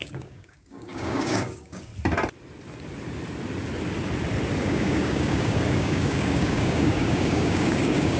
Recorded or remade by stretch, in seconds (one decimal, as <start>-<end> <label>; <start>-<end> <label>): 0.0-1.9 remade; 1.9-4.6 recorded; 4.6-8.2 remade